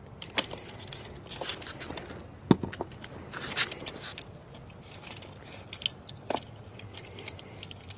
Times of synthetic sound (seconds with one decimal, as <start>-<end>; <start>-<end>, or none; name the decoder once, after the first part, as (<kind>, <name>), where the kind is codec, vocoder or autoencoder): none